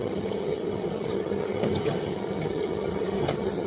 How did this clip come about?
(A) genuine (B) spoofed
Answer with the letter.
B